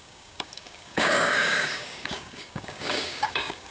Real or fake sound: fake